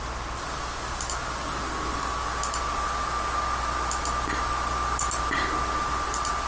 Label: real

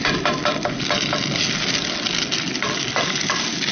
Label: real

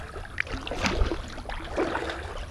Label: real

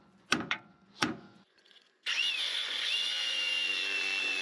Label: fake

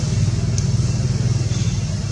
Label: real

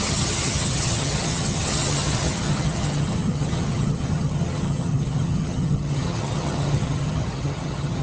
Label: fake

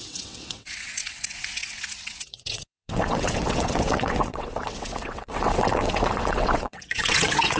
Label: fake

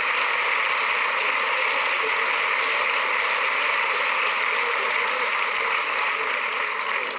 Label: real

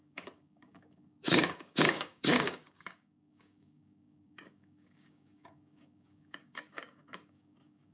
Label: fake